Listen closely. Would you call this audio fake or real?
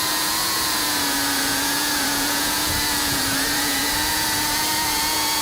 fake